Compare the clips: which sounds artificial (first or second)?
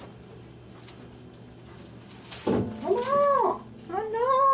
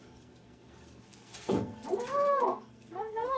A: second